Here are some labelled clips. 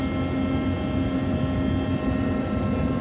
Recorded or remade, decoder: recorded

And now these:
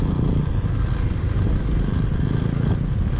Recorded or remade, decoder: recorded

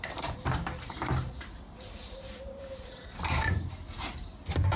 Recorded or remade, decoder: remade, vocoder, BigVGAN v2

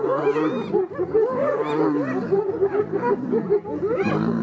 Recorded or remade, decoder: recorded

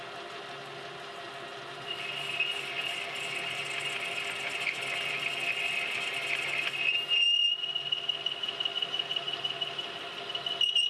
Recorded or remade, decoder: recorded